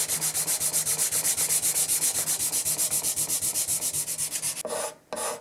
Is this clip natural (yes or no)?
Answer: yes